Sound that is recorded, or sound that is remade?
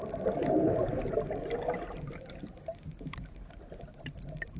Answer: recorded